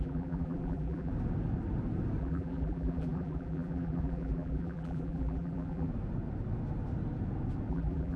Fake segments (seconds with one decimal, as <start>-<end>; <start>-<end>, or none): 0.0-1.1; 2.2-5.9; 7.7-8.2